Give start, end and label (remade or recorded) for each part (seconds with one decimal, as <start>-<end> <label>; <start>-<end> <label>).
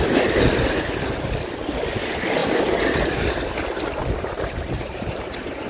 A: 0.0-4.0 recorded; 4.0-5.7 remade